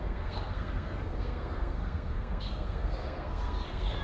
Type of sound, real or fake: fake